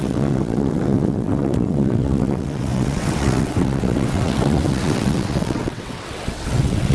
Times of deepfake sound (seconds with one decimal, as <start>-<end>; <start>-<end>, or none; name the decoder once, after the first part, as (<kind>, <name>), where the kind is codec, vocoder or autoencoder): 0.0-6.9 (vocoder, WaveNeXt)